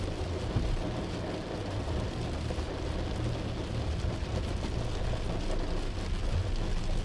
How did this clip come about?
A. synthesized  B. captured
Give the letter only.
B